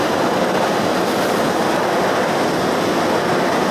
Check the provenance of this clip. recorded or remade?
recorded